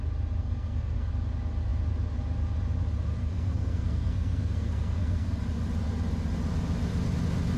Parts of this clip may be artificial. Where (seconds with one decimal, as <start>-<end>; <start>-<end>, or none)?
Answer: 0.4-1.1; 3.2-5.4